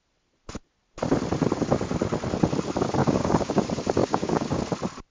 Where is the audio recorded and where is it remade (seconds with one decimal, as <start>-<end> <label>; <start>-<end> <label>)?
0.0-3.0 recorded; 3.0-3.6 remade; 3.6-4.0 recorded; 4.0-4.6 remade; 4.6-5.1 recorded